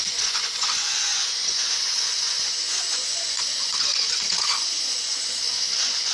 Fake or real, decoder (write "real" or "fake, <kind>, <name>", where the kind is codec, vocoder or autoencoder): fake, vocoder, Vocos